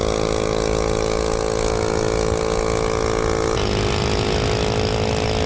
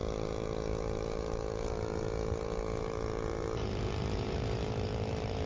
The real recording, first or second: first